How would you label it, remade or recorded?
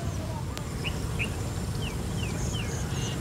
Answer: recorded